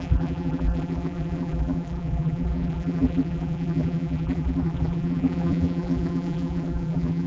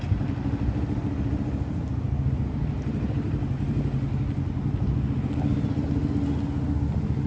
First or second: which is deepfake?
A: first